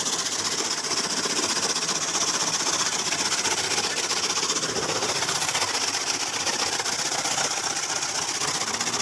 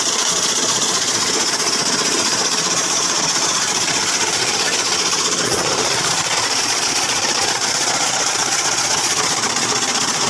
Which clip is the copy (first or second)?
second